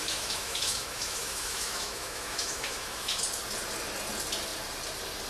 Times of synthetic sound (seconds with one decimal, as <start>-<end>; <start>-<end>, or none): 0.0-3.2